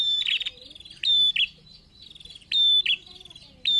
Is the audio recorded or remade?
recorded